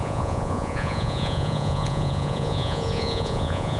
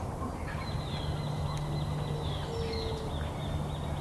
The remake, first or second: first